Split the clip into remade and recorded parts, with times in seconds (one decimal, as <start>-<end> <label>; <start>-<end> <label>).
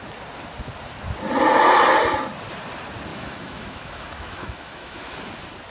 0.0-3.1 recorded; 3.1-5.3 remade; 5.3-5.7 recorded